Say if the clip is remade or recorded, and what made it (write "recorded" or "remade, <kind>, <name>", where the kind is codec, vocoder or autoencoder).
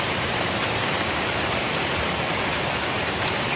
remade, vocoder, BigVGAN v2